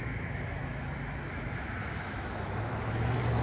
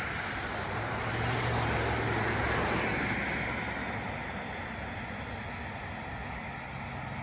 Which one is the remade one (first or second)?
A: first